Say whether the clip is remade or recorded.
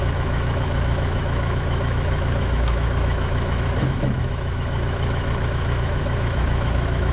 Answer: remade